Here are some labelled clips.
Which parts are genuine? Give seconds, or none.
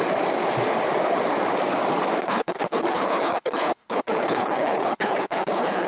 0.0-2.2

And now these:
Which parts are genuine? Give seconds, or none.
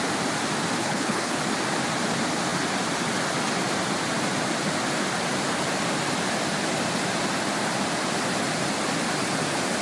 0.0-0.8; 1.4-9.8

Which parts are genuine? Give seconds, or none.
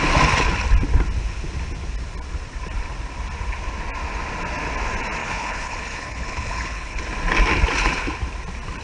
0.0-5.2; 7.0-8.8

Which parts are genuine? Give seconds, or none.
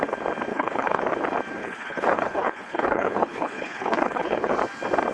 0.0-0.5; 1.0-1.6; 4.5-5.1